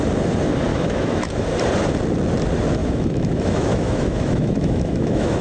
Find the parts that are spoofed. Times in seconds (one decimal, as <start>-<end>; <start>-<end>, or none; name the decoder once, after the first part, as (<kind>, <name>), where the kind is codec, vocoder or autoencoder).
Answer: 0.7-1.3 (autoencoder, DAC-VAE); 2.8-5.4